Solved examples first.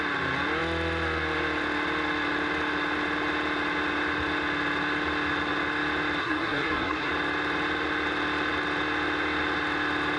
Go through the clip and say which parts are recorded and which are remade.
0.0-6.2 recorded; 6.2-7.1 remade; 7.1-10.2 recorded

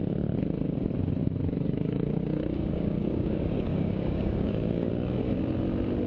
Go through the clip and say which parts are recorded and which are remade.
0.0-1.2 recorded; 1.2-4.9 remade; 4.9-6.1 recorded

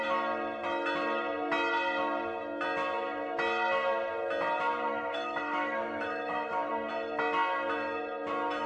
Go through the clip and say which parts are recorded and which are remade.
0.0-4.9 recorded; 4.9-6.7 remade; 6.7-8.7 recorded

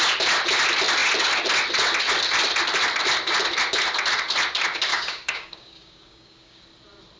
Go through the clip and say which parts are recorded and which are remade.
0.0-4.9 recorded; 4.9-6.6 remade; 6.6-7.2 recorded

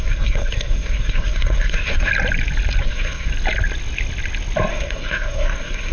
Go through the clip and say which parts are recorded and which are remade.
0.0-2.1 remade; 2.1-2.8 recorded; 2.8-3.3 remade; 3.3-4.7 recorded; 4.7-5.9 remade

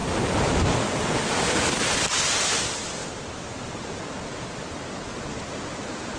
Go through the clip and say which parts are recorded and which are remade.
0.0-1.2 remade; 1.2-3.0 recorded; 3.0-4.0 remade; 4.0-5.3 recorded; 5.3-6.2 remade

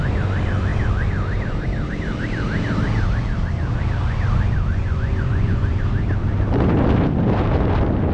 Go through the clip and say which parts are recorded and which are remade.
0.0-4.7 recorded; 4.7-5.8 remade; 5.8-8.1 recorded